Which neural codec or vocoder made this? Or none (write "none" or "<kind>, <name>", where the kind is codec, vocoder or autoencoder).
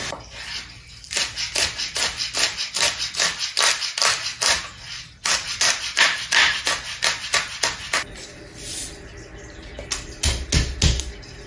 none